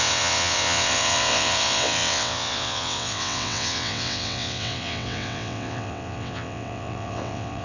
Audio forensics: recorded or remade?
remade